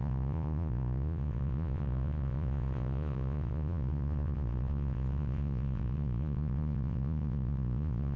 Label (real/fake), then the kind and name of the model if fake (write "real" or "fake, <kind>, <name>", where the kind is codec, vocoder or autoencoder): fake, vocoder, Vocos